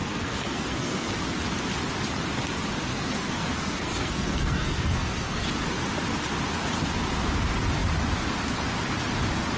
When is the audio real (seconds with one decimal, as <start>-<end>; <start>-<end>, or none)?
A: 1.1-2.9; 5.5-9.6